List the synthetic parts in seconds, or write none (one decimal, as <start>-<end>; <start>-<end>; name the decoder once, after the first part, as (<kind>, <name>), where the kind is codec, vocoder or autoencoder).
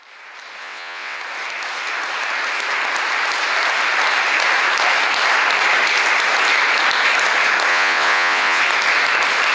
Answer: 0.6-1.2 (vocoder, WaveNeXt); 7.7-8.6